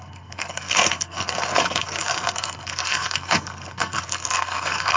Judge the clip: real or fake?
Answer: fake